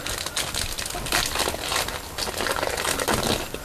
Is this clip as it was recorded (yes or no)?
yes